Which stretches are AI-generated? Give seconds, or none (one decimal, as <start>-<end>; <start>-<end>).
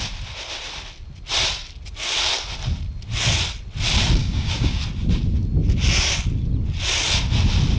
4.2-4.8